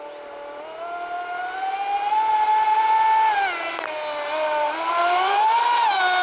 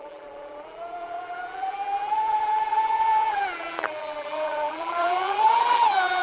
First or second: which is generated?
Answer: second